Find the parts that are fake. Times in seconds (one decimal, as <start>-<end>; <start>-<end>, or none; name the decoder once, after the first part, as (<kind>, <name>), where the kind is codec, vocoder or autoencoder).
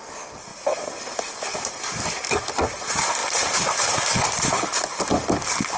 none